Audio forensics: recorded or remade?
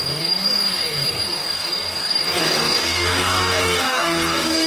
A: remade